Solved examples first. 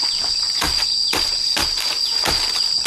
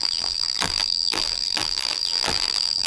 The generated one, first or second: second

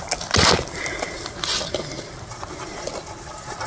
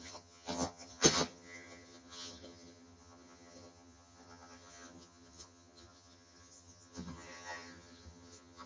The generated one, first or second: second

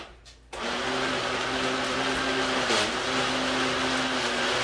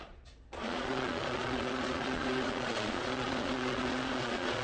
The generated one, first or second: second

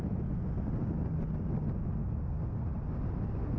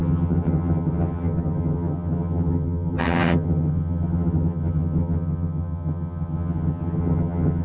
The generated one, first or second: second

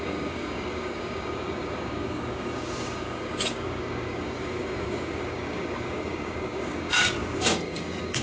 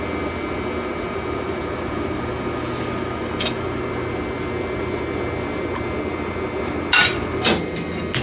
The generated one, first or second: first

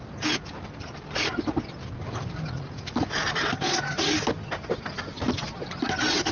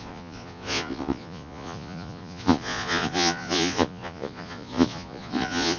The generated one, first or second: second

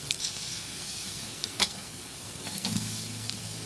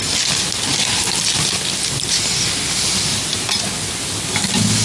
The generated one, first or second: first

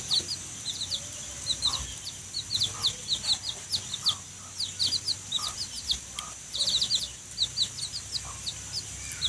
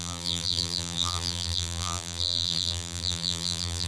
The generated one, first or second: second